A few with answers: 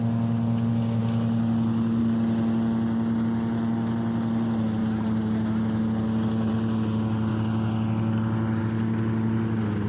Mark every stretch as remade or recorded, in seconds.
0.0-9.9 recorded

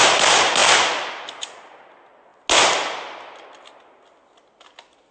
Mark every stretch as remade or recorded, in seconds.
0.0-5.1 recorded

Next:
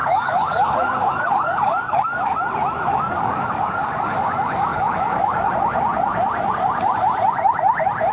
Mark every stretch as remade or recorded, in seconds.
0.0-2.4 remade; 2.4-2.9 recorded; 2.9-4.0 remade; 4.0-4.7 recorded; 4.7-5.5 remade; 5.5-8.1 recorded

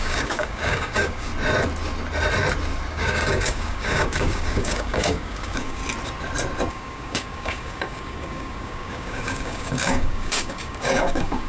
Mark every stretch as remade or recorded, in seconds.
0.0-1.3 remade; 1.3-2.9 recorded; 2.9-5.8 remade; 5.8-6.7 recorded; 6.7-11.5 remade